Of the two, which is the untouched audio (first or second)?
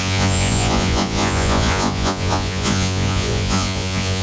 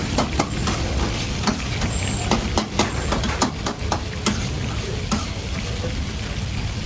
second